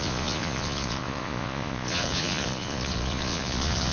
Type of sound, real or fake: fake